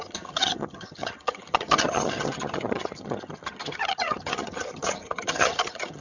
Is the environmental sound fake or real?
fake